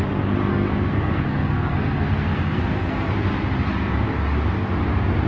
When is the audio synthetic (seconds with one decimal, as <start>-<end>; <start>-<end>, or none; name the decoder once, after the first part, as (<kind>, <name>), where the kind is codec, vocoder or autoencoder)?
0.5-3.1 (codec, SNAC)